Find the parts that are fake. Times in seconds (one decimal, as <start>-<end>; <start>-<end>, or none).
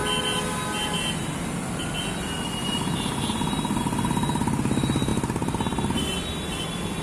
none